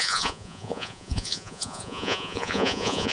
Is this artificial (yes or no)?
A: yes